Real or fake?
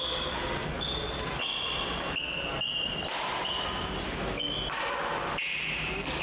real